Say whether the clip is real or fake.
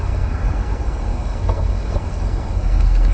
fake